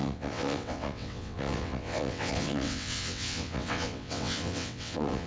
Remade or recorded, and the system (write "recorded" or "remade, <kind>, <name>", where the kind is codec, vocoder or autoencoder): remade, vocoder, WaveNeXt